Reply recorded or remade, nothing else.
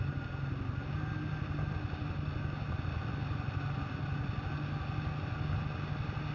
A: recorded